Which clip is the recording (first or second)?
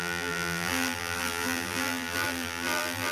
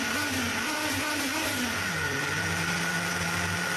second